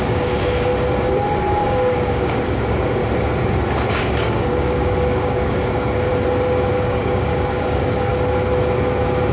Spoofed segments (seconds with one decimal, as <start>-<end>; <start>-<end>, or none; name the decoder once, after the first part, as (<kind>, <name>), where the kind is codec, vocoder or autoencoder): 0.0-0.7 (codec, DAC); 1.6-3.0; 3.9-6.1; 6.7-8.1

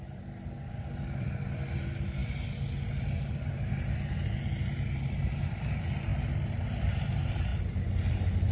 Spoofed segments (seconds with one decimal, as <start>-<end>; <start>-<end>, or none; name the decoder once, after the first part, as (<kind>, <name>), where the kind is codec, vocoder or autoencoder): none

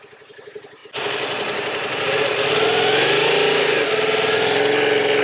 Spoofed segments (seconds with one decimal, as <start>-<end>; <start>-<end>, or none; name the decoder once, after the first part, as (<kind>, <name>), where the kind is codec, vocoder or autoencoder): none